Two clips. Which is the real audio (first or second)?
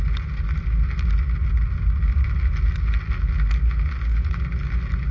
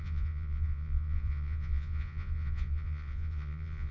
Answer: first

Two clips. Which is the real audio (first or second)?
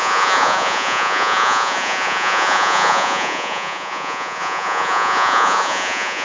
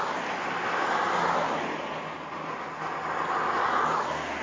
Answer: second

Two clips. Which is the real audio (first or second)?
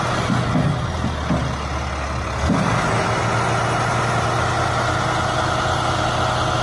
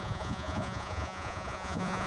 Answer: first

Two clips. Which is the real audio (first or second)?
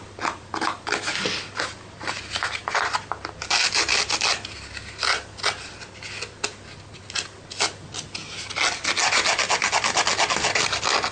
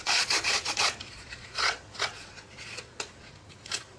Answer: first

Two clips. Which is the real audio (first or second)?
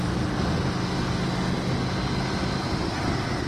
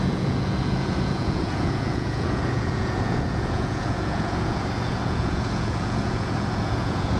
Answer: first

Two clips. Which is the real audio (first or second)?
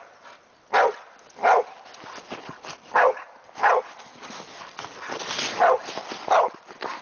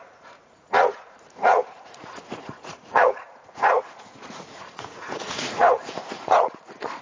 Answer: first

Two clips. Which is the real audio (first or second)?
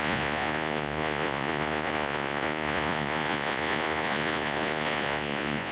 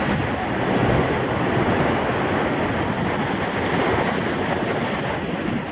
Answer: second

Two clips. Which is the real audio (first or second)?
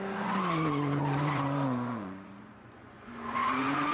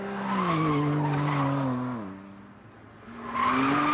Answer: second